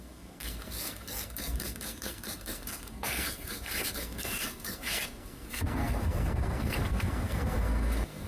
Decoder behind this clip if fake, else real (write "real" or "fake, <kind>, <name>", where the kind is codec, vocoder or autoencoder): fake, codec, SNAC